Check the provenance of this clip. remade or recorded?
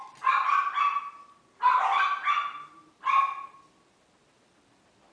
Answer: recorded